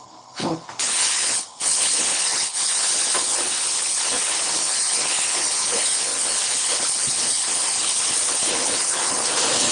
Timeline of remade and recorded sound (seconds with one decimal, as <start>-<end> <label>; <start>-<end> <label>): 0.0-9.7 remade